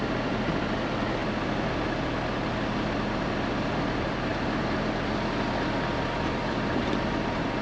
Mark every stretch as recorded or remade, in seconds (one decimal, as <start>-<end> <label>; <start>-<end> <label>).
0.0-1.2 remade; 1.2-2.9 recorded; 2.9-4.3 remade; 4.3-6.3 recorded; 6.3-7.6 remade